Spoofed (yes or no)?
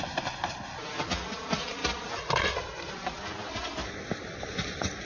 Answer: no